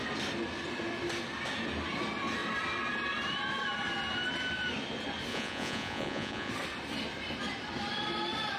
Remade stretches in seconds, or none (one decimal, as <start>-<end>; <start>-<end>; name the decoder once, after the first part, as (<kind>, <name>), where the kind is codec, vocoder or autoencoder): 5.3-6.5 (vocoder, Vocos)